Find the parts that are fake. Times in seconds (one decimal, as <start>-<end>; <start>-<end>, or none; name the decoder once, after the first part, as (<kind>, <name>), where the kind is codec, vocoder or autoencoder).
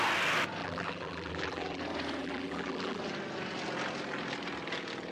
0.6-1.8 (vocoder, BigVGAN v2); 2.2-3.0